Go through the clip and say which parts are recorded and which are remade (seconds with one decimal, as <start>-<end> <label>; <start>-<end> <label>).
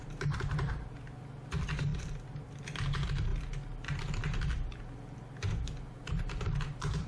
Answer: 0.0-1.2 remade; 1.2-6.0 recorded; 6.0-7.1 remade